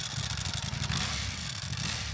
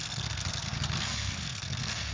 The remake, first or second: second